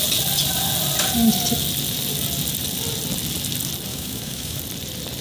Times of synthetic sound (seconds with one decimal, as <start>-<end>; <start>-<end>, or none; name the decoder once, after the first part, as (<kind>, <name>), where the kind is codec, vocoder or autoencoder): 3.9-4.6 (autoencoder, DAC-VAE)